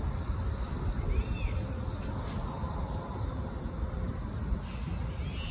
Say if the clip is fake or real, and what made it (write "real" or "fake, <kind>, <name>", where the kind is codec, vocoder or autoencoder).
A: real